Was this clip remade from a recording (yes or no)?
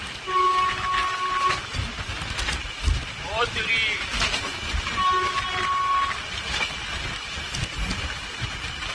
no